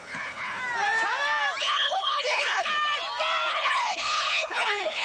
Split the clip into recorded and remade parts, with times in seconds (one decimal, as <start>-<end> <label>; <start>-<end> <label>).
0.0-0.6 remade; 0.6-1.6 recorded; 1.6-2.7 remade; 2.7-3.5 recorded; 3.5-5.0 remade